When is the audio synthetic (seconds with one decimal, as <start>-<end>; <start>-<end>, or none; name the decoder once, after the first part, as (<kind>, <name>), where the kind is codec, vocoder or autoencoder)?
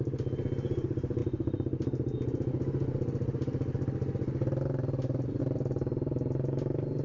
none